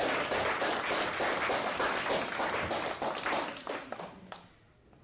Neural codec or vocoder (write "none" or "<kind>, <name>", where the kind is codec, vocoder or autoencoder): none